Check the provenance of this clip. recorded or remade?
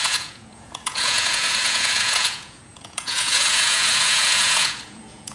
remade